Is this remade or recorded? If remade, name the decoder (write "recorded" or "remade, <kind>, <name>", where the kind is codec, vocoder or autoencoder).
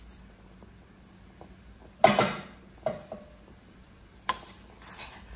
recorded